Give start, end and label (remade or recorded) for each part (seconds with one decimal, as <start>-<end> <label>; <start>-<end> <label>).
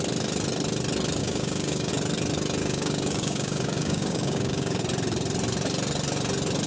0.0-1.2 recorded; 1.2-1.9 remade; 1.9-2.6 recorded; 2.6-4.8 remade; 4.8-6.7 recorded